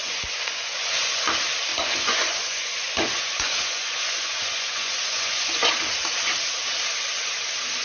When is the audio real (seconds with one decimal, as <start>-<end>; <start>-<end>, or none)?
1.2-1.7; 5.7-7.8